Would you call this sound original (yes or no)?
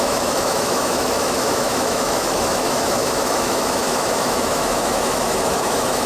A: no